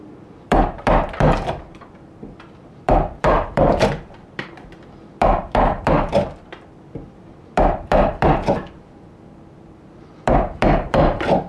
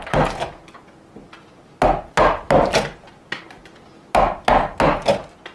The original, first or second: second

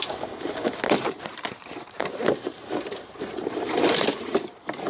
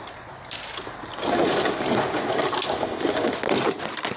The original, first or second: second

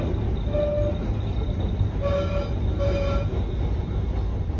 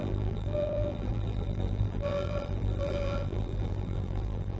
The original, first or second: first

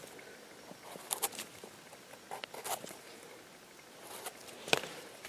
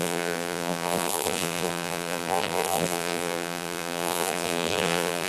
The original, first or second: first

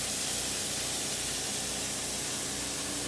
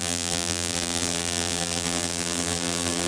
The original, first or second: first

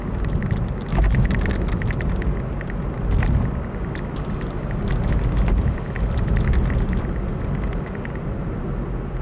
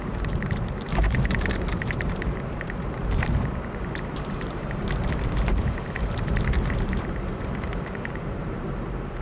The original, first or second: first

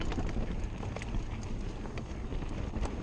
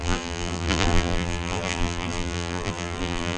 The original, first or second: first